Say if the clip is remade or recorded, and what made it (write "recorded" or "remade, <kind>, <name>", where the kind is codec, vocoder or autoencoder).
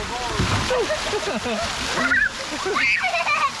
recorded